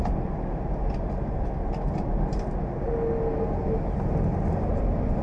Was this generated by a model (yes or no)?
no